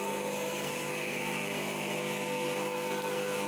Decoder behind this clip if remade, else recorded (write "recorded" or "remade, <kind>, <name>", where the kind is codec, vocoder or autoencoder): remade, codec, SNAC